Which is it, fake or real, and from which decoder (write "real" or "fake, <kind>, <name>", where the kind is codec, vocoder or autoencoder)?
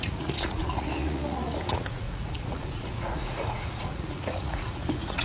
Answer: fake, vocoder, Vocos